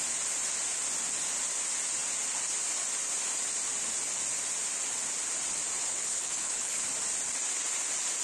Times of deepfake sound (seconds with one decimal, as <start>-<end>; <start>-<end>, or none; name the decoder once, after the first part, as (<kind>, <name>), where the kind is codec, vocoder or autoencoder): 5.9-6.9 (codec, HILCodec)